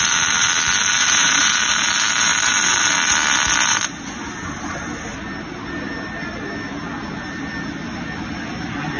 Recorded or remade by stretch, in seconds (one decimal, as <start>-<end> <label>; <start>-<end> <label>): 0.0-1.0 recorded; 1.0-1.5 remade; 1.5-9.0 recorded